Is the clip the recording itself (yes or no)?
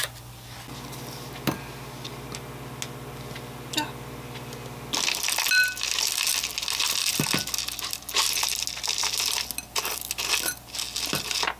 yes